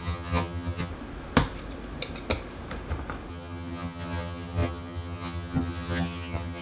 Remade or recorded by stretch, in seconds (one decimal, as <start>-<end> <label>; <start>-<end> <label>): 0.0-0.9 remade; 0.9-3.3 recorded; 3.3-6.6 remade